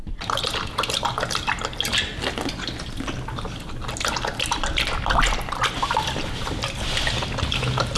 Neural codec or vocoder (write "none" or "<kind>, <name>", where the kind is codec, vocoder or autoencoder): none